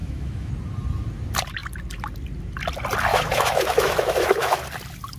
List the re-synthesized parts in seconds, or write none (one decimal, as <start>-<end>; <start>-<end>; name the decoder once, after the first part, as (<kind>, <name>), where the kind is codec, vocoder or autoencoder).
0.0-0.5 (autoencoder, DAC-VAE); 3.1-4.6

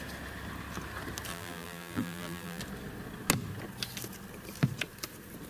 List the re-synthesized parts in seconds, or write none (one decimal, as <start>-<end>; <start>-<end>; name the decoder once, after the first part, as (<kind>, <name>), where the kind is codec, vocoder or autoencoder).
1.3-2.6 (vocoder, BigVGAN v2)

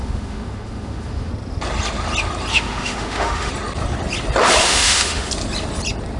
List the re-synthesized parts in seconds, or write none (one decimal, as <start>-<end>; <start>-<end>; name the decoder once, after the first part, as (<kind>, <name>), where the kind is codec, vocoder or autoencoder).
0.0-1.3 (autoencoder, DAC-VAE); 2.5-3.5; 4.6-5.3

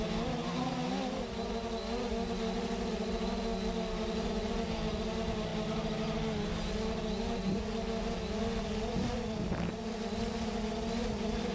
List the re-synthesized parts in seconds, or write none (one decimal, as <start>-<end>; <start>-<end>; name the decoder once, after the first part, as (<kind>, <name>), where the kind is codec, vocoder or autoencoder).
none

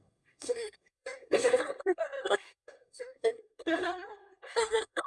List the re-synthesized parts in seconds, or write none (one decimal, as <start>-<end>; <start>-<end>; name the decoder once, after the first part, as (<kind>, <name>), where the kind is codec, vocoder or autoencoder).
0.0-5.1 (codec, SNAC)